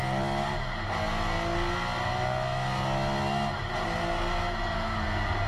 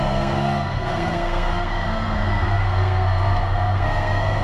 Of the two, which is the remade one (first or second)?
second